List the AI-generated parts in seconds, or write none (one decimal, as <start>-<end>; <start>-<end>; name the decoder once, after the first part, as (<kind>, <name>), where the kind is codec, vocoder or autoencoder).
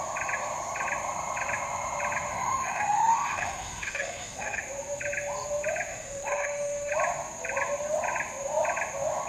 2.3-4.6 (autoencoder, DAC-VAE); 5.9-6.9